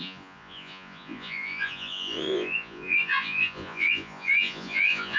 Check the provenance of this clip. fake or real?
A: fake